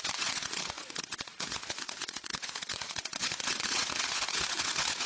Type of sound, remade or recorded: remade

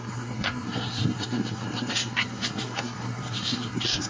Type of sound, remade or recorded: remade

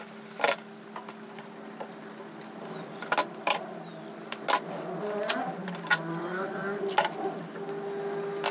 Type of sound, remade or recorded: recorded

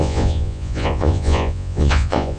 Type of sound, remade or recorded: remade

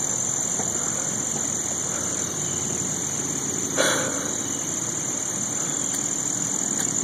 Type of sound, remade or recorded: remade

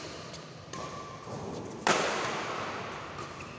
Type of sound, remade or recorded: recorded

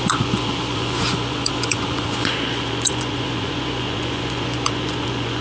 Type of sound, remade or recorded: remade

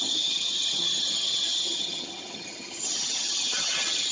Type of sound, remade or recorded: remade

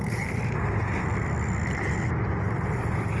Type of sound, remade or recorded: recorded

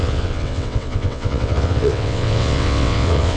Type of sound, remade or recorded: remade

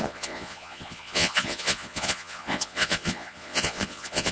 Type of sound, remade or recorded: remade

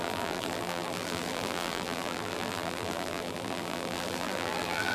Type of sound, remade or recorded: remade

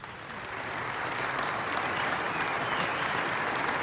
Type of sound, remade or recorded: recorded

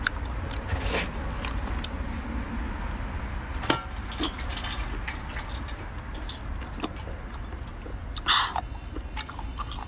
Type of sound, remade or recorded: recorded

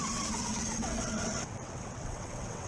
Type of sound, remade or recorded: remade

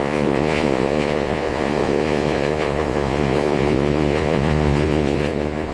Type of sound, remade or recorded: remade